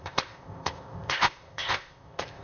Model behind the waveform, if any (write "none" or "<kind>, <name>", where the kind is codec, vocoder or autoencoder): codec, ZipCodec